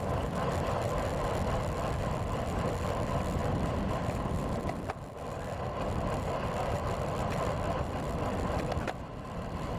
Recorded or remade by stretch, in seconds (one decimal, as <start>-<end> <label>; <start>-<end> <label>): 0.0-9.8 recorded